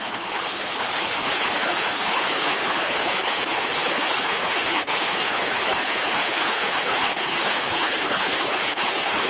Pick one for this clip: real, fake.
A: fake